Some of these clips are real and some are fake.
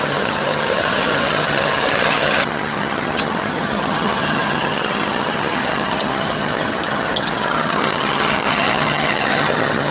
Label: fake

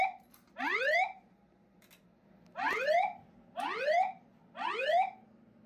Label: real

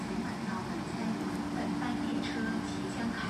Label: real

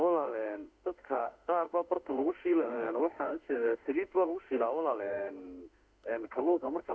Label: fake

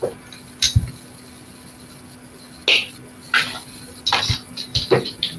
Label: real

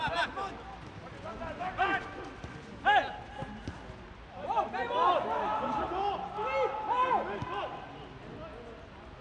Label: real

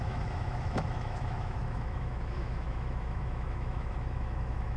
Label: fake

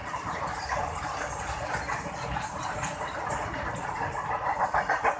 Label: real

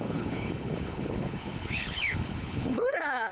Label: fake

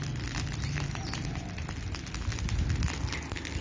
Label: real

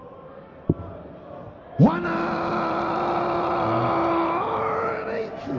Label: real